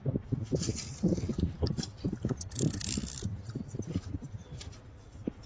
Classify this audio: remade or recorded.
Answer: recorded